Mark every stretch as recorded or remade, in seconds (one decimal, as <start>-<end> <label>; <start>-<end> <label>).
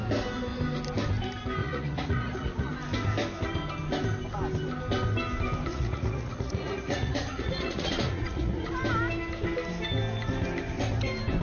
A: 0.0-1.6 recorded; 1.6-2.7 remade; 2.7-5.7 recorded; 5.7-8.7 remade; 8.7-11.4 recorded